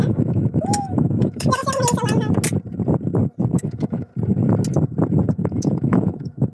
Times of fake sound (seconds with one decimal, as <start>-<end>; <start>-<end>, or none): 0.0-1.6; 3.5-4.1; 5.3-6.5